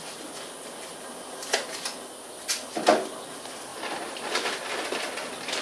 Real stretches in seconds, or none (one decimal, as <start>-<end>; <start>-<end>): 0.0-5.6